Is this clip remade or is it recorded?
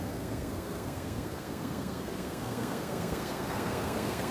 remade